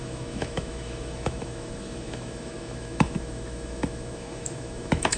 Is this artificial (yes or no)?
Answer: yes